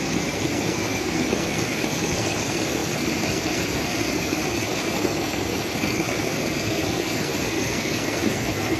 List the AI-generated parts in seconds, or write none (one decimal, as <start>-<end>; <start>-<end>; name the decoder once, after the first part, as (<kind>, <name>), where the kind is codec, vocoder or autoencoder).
0.0-8.8 (codec, SNAC)